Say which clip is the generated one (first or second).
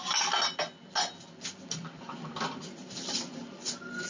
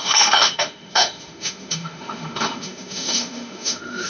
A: second